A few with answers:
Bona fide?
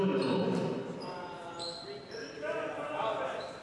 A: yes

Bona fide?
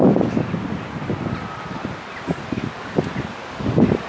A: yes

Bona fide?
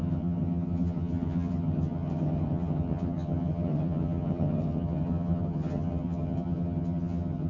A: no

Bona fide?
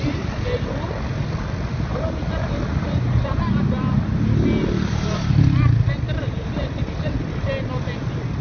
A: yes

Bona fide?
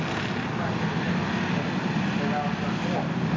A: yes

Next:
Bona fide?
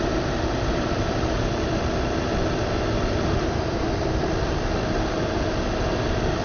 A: no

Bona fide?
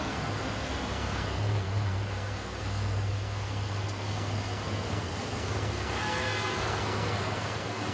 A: no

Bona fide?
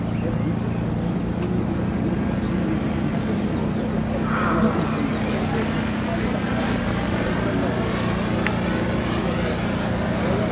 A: yes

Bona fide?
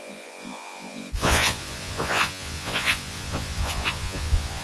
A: no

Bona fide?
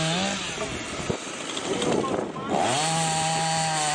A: yes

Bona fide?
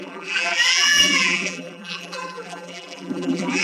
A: no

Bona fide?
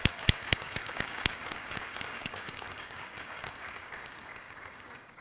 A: no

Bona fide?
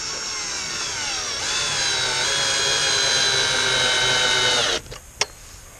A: yes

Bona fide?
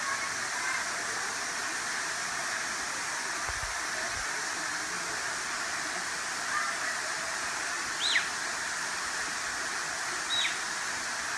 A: yes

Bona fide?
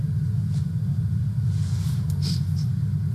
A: yes